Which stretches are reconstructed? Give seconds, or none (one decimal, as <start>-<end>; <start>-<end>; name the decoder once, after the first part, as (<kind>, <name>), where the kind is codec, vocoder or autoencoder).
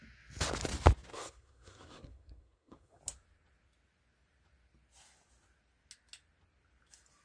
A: 1.1-3.0 (codec, SNAC)